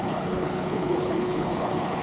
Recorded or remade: remade